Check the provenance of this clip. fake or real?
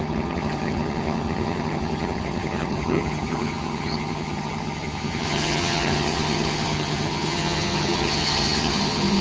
fake